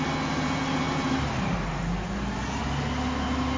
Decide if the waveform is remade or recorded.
recorded